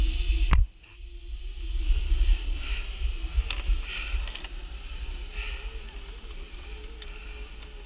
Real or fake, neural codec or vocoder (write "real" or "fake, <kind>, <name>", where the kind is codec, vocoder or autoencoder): real